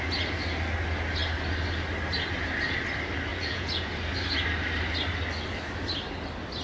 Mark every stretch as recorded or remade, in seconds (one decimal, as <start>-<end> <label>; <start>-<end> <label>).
0.0-3.3 recorded; 3.3-3.9 remade; 3.9-6.6 recorded